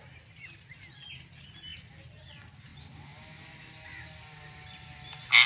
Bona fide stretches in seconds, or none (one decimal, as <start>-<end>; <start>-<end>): 0.0-5.5